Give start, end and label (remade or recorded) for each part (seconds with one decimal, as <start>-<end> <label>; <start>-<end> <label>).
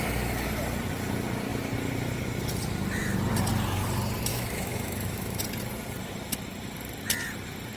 0.0-4.3 recorded; 4.3-5.4 remade; 5.4-7.8 recorded